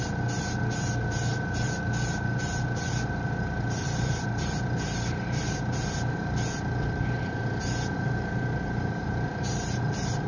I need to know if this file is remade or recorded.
remade